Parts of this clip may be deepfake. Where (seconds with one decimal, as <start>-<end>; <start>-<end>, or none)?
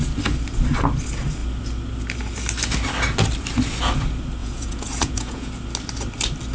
4.4-5.5